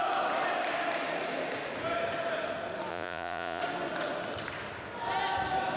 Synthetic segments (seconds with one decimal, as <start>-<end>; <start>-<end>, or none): 2.9-3.6

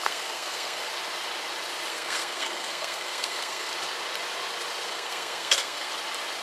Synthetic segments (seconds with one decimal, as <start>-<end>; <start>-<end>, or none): 0.0-0.9; 1.9-3.7; 4.9-5.9

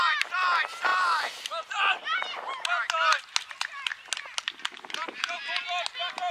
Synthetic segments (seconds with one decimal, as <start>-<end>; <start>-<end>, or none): 0.9-1.9; 5.0-5.6

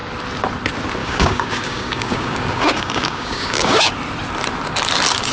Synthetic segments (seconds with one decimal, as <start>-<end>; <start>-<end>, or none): 1.0-3.9

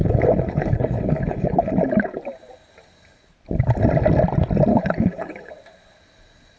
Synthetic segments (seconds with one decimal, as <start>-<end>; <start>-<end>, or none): 0.0-1.7; 4.7-5.5

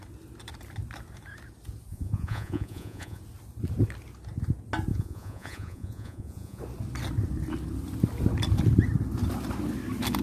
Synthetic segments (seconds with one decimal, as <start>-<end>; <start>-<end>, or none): 1.9-3.2; 4.9-6.6

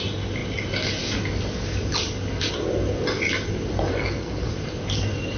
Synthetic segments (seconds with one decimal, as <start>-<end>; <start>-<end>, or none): 3.9-4.5

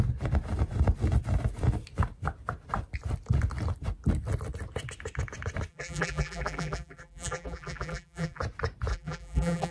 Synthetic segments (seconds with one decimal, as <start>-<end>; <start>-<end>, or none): 5.7-8.4; 8.9-9.7